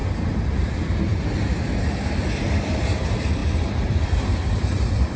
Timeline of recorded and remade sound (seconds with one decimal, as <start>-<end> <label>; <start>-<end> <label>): 0.0-0.6 recorded; 0.6-1.1 remade; 1.1-2.3 recorded; 2.3-5.2 remade